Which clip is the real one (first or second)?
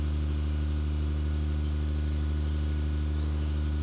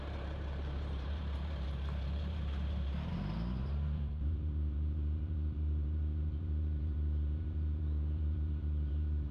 first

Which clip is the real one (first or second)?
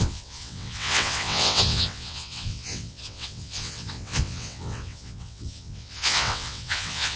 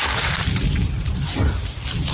second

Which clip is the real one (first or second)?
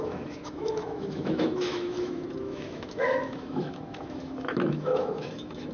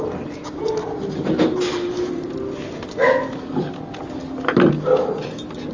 second